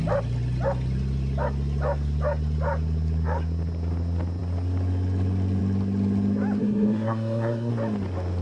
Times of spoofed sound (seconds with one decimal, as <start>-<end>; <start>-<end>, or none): 6.6-7.7